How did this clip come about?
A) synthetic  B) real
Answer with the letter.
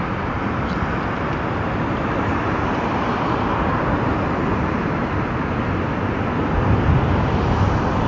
B